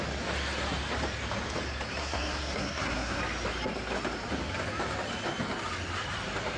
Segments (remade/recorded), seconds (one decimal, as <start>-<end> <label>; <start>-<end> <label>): 0.0-2.0 recorded; 2.0-3.2 remade; 3.2-6.6 recorded